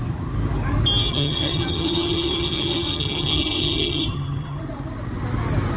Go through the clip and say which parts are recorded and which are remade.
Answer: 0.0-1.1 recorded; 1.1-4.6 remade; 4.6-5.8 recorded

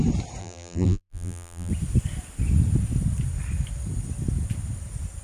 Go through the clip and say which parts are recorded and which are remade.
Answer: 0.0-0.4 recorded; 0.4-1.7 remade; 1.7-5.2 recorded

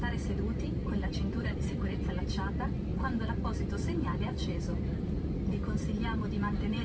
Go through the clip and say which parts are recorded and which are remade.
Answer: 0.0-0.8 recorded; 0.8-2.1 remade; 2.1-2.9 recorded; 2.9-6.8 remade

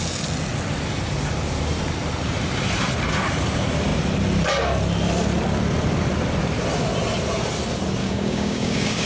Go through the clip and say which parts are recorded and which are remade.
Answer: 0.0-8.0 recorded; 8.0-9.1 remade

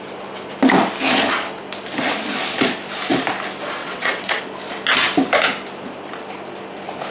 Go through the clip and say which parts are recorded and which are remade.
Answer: 0.0-3.8 recorded; 3.8-4.4 remade; 4.4-7.1 recorded

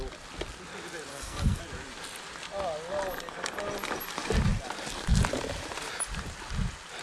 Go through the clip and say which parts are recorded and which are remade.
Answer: 0.0-1.1 recorded; 1.1-1.6 remade; 1.6-7.0 recorded